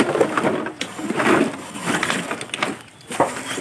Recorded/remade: recorded